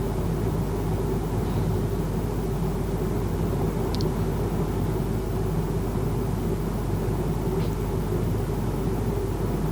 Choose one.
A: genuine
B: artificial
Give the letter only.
A